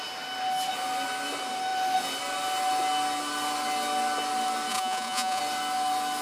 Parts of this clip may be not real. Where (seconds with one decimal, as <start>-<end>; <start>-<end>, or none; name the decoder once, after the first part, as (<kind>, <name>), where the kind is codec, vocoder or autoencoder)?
4.7-5.4 (vocoder, Vocos)